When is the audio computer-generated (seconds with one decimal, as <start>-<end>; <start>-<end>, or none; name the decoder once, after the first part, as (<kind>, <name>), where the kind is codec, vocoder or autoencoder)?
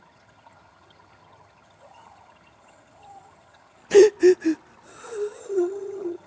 0.0-3.8 (vocoder, HiFi-GAN); 5.4-6.3